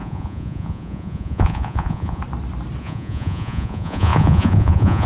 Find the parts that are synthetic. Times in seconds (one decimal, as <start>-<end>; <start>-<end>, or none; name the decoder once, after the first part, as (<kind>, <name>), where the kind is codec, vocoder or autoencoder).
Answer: 0.0-2.2 (vocoder, Vocos); 2.8-5.1